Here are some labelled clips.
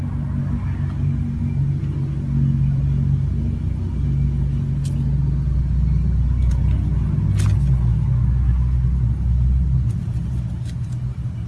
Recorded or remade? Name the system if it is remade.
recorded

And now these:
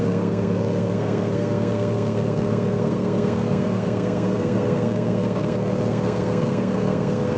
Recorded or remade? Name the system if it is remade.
remade, codec, SNAC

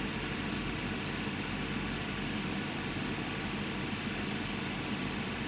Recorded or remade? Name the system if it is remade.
recorded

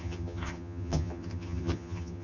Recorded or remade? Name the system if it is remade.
remade, vocoder, HiFi-GAN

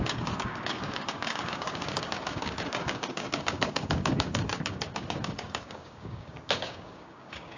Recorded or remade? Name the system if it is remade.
remade, codec, DAC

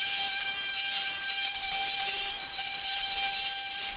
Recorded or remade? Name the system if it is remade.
recorded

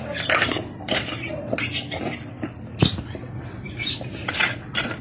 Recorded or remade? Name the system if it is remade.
remade, vocoder, BigVGAN v2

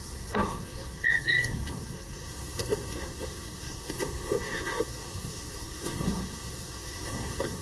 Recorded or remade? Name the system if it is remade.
remade, codec, SNAC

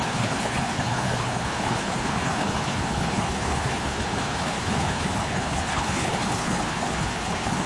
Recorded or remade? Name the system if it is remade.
remade, codec, HILCodec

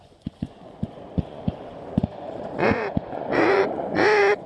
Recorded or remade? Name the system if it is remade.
remade, vocoder, Vocos